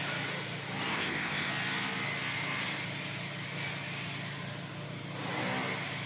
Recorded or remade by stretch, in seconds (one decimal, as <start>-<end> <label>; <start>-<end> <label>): 0.0-0.9 recorded; 0.9-1.5 remade; 1.5-6.1 recorded

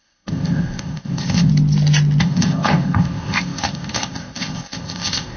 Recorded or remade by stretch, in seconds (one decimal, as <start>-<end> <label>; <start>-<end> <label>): 0.0-1.5 remade; 1.5-2.2 recorded; 2.2-5.4 remade

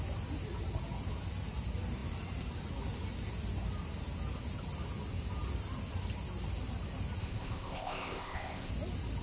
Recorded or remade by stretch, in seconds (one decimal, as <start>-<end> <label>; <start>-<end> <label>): 0.0-7.2 recorded; 7.2-8.7 remade; 8.7-9.2 recorded

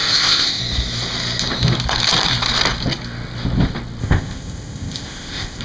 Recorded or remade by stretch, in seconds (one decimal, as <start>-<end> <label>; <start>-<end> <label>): 0.0-0.6 remade; 0.6-4.0 recorded; 4.0-5.6 remade

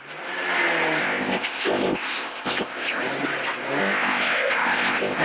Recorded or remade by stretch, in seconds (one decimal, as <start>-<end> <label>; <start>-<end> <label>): 0.0-1.0 recorded; 1.0-3.0 remade; 3.0-3.8 recorded; 3.8-5.2 remade

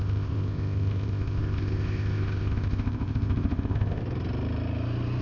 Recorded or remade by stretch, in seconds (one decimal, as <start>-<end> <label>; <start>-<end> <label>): 0.0-4.0 remade; 4.0-5.2 recorded

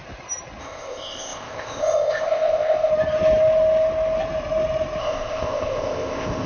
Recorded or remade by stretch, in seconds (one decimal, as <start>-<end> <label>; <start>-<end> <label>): 0.0-0.6 recorded; 0.6-2.9 remade; 2.9-5.0 recorded; 5.0-6.5 remade